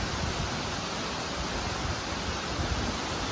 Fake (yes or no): no